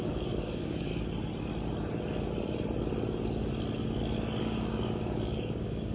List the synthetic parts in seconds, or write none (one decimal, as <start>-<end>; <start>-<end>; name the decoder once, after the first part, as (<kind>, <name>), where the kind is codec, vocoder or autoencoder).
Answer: 0.0-0.9 (codec, DAC); 4.4-5.9